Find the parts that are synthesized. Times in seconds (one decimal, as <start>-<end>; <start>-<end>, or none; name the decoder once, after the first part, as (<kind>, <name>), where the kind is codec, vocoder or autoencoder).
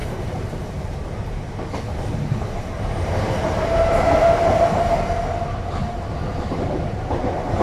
0.0-1.1 (vocoder, BigVGAN v2); 5.8-7.6